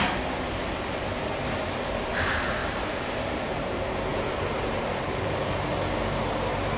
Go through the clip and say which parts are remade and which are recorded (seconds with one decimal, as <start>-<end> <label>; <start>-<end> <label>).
0.0-1.2 recorded; 1.2-2.1 remade; 2.1-2.6 recorded; 2.6-3.1 remade; 3.1-4.1 recorded; 4.1-5.7 remade; 5.7-6.8 recorded